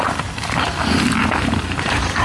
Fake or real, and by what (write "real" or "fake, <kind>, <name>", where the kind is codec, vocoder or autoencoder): real